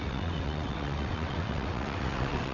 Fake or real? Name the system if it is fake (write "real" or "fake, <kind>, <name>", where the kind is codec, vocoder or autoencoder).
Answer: fake, vocoder, WaveNeXt